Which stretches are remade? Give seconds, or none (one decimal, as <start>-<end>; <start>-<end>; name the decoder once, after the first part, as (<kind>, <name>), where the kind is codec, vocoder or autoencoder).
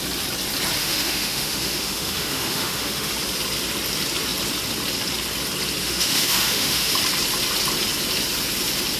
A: 0.8-3.1 (autoencoder, DAC-VAE); 5.8-6.9